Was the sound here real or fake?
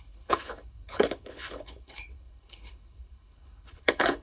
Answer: fake